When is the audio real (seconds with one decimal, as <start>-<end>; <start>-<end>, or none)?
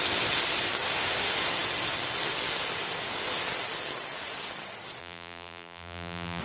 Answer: 0.0-5.0